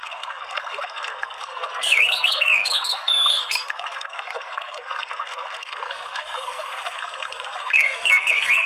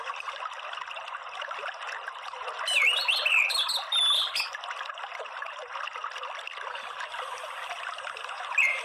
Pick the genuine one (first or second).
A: second